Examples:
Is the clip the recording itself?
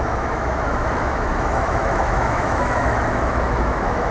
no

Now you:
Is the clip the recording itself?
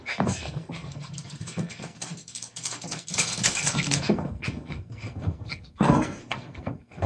no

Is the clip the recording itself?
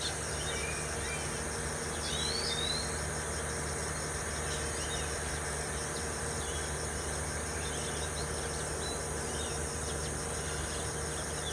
yes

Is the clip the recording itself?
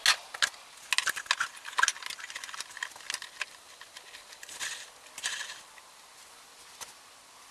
yes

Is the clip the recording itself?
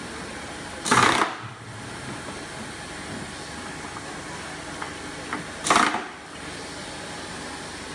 yes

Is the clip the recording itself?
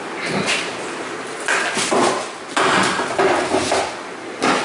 yes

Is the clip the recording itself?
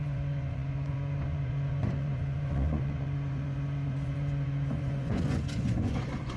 no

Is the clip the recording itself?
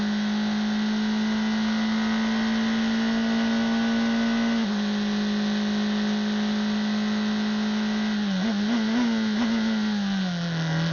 yes